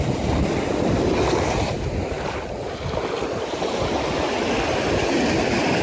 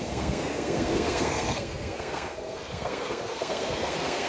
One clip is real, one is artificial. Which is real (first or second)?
first